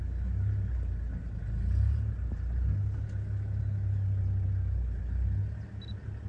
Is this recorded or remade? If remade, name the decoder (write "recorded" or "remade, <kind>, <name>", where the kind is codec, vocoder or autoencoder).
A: recorded